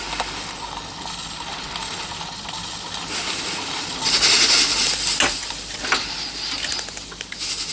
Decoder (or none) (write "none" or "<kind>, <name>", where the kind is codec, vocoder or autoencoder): none